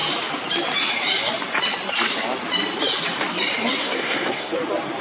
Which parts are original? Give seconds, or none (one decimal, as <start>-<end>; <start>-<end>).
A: 0.0-3.8; 4.5-5.0